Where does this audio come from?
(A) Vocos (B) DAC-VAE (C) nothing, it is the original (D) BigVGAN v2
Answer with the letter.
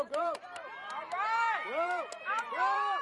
D